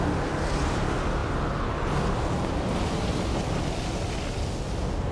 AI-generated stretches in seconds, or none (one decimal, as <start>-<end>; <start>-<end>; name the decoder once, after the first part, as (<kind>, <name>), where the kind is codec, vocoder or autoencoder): none